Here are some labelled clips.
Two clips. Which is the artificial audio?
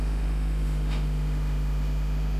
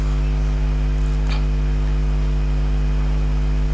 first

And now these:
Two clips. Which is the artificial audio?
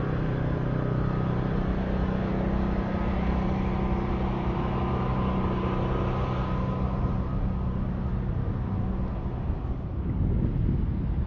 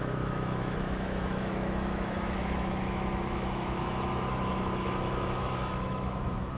second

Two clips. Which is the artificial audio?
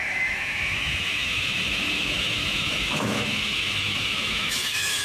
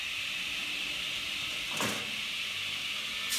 first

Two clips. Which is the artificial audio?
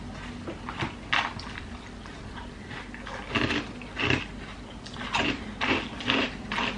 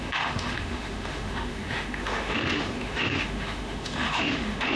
second